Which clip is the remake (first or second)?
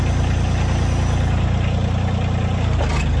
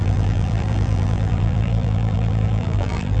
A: second